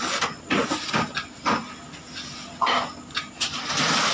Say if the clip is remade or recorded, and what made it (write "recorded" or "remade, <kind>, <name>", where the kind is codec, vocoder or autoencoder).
recorded